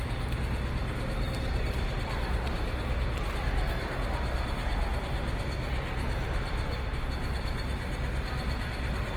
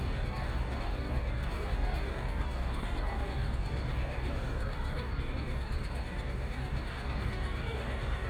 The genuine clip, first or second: first